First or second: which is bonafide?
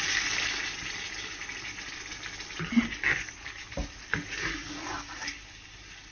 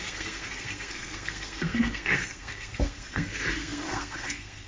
first